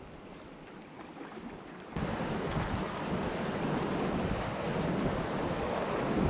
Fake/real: real